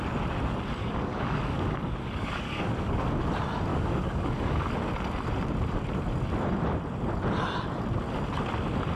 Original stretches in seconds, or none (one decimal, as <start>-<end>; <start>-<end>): 0.0-0.8; 3.1-3.7; 4.7-9.0